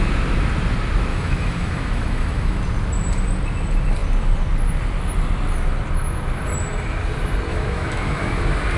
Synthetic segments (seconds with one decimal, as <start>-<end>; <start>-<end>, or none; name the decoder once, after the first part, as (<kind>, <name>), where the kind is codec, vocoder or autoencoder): 1.1-2.6 (autoencoder, DAC-VAE); 7.5-8.4